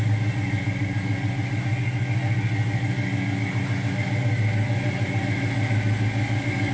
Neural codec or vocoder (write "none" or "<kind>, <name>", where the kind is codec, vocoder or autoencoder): none